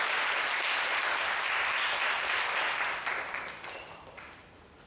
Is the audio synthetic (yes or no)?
yes